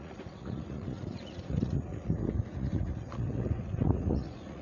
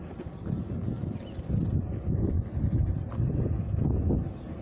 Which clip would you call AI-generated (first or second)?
first